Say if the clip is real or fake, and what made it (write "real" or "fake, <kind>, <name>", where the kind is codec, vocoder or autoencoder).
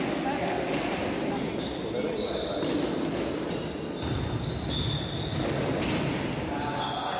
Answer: real